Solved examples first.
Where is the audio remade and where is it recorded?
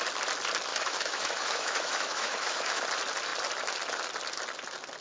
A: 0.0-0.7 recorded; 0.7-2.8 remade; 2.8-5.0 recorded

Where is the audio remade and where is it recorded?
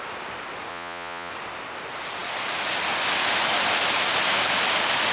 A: 0.0-0.7 recorded; 0.7-1.3 remade; 1.3-5.1 recorded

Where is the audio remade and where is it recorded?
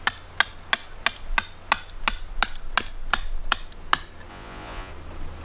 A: 0.0-4.3 recorded; 4.3-4.9 remade; 4.9-5.4 recorded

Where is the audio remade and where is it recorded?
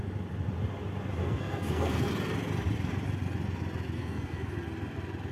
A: 0.0-1.2 recorded; 1.2-2.1 remade; 2.1-4.0 recorded; 4.0-4.5 remade; 4.5-5.3 recorded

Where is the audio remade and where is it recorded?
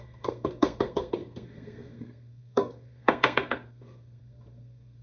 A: 0.0-5.0 remade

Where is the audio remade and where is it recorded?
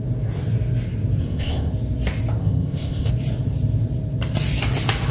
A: 0.0-1.2 recorded; 1.2-1.7 remade; 1.7-2.4 recorded; 2.4-3.1 remade; 3.1-5.1 recorded